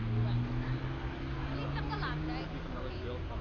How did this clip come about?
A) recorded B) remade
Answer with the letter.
A